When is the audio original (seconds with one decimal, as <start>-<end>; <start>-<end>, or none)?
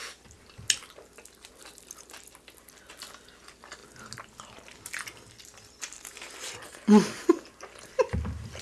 0.0-8.6